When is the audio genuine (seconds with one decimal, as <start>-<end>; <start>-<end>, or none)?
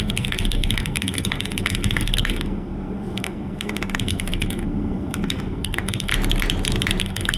6.1-7.0